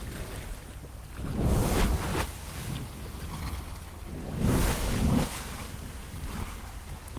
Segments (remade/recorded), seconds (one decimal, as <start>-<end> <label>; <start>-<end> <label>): 0.0-2.1 recorded; 2.1-2.8 remade; 2.8-4.2 recorded; 4.2-7.2 remade